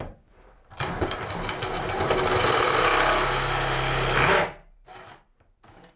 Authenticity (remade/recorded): recorded